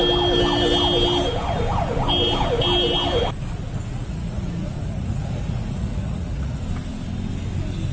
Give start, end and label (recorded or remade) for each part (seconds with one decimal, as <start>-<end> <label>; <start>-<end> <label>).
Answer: 0.0-3.9 recorded; 3.9-6.6 remade; 6.6-7.9 recorded